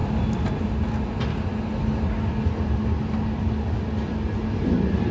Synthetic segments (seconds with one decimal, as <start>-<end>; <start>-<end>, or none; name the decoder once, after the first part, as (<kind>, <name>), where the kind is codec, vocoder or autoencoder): none